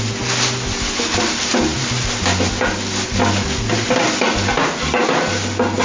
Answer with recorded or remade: recorded